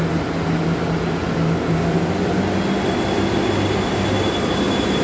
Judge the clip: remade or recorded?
recorded